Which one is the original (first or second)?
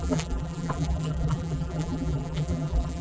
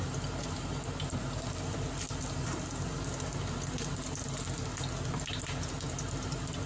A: second